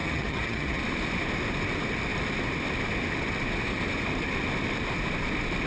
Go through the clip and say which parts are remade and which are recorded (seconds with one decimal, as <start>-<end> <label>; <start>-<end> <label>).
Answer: 0.0-0.8 remade; 0.8-5.7 recorded